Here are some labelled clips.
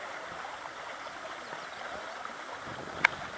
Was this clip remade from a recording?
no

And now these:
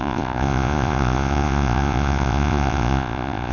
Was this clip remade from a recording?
yes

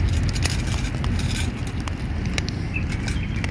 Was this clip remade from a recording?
no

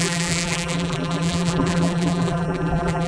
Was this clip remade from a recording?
yes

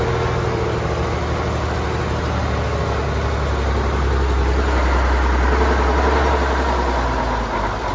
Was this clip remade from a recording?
no